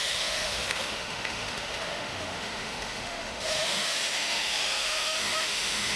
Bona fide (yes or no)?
no